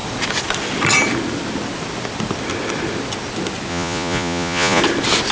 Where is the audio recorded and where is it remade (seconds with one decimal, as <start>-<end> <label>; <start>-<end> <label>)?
0.0-3.7 recorded; 3.7-4.8 remade; 4.8-5.3 recorded